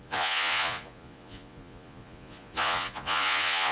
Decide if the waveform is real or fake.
fake